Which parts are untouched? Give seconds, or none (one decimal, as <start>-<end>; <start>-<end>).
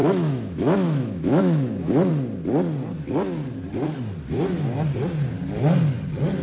2.1-6.4